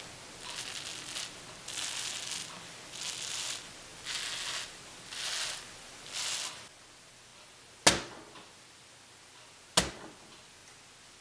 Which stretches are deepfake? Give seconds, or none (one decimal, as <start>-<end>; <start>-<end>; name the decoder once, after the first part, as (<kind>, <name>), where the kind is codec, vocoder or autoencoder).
none